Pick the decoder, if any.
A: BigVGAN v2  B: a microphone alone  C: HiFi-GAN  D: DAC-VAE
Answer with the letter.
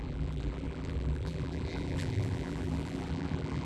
A